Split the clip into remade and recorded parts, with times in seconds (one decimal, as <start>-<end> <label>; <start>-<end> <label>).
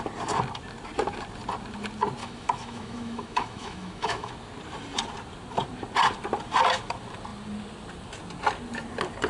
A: 0.0-2.2 recorded; 2.2-4.3 remade; 4.3-9.3 recorded